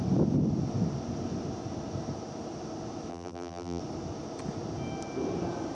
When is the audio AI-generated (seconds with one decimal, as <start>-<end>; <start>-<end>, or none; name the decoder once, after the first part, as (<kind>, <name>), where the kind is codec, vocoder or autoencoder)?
3.1-3.8 (vocoder, BigVGAN v2)